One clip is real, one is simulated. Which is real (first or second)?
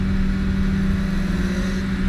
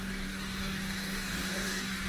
first